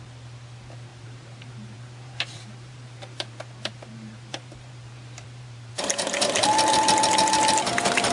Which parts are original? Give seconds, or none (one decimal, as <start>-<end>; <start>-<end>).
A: 0.0-0.9; 5.7-8.1

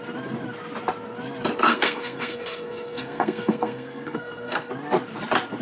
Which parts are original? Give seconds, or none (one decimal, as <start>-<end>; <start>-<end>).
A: 0.0-1.7; 4.7-5.6